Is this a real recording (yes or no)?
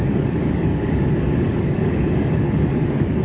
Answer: no